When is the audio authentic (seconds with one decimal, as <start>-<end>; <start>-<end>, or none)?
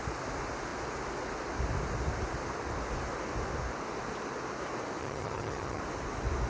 0.0-5.0; 5.8-6.5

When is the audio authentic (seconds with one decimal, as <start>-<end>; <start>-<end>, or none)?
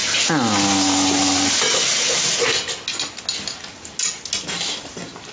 0.0-5.3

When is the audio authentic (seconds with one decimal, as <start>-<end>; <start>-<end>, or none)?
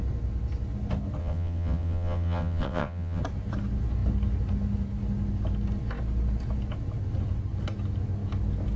0.0-1.2; 3.2-8.8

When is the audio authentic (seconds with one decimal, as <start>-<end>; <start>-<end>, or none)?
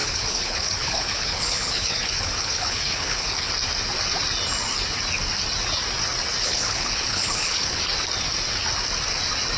3.5-6.4; 7.8-9.6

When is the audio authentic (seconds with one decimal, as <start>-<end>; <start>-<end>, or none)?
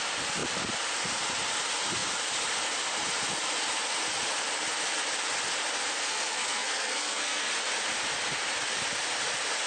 0.0-6.0; 7.5-9.7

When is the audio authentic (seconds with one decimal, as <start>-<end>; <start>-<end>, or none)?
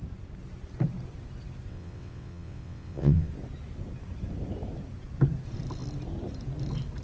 0.0-1.7; 3.3-7.0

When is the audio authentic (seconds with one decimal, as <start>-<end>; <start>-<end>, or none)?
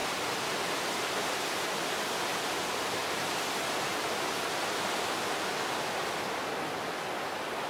0.0-7.7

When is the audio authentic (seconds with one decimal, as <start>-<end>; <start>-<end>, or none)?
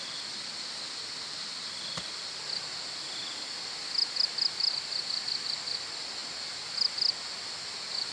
0.0-8.1